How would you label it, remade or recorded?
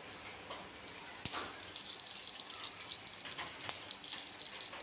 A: recorded